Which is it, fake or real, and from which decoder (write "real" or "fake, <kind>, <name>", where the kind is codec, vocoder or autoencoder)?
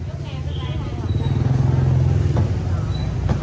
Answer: real